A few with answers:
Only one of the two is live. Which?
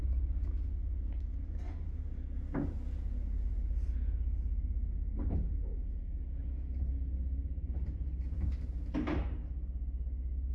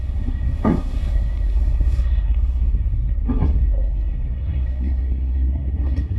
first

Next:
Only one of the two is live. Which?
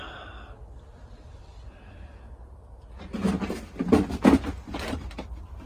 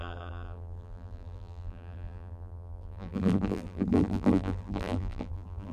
first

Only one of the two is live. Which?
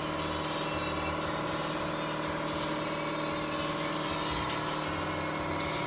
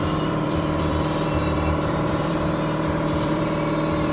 first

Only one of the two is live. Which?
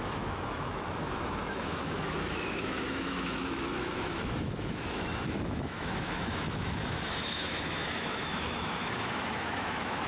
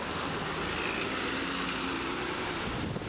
second